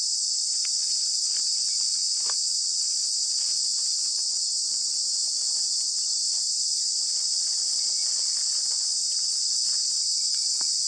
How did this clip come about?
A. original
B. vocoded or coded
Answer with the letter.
B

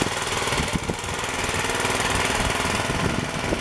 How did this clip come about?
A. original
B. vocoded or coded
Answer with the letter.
A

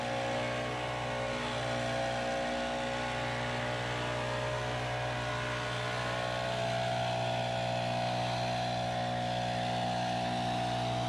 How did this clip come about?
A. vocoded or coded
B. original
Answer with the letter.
B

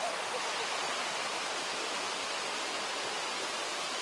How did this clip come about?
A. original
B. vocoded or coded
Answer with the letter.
A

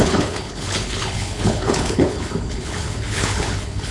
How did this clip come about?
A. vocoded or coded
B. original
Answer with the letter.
A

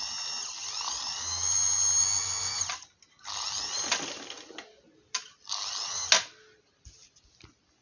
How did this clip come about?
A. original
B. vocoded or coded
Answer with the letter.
A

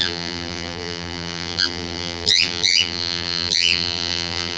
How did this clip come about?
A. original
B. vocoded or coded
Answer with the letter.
B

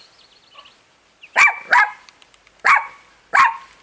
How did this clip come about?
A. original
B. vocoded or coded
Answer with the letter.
A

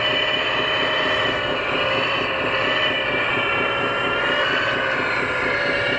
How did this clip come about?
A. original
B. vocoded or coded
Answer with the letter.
A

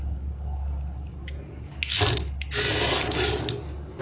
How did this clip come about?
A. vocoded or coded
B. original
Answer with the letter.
B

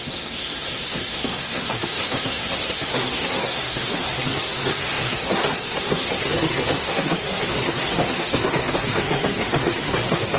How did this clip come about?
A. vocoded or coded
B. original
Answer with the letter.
A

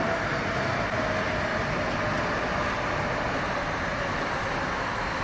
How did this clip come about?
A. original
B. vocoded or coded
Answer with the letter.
A